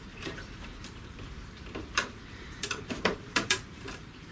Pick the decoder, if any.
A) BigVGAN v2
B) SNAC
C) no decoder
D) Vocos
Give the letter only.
A